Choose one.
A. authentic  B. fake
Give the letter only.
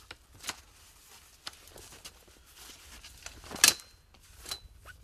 A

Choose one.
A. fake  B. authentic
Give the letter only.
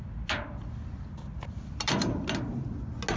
B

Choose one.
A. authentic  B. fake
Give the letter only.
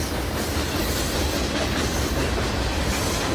A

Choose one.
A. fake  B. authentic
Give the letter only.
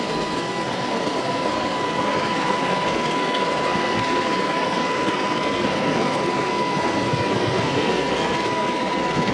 A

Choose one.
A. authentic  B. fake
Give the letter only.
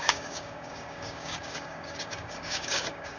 B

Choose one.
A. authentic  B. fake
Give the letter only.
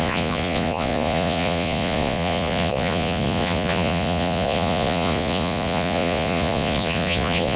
B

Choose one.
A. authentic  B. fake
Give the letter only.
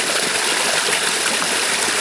A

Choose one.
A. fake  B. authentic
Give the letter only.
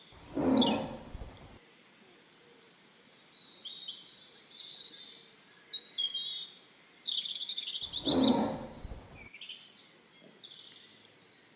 B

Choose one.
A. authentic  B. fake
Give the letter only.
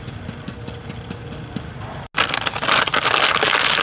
A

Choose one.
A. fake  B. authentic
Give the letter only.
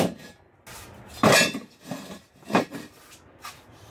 B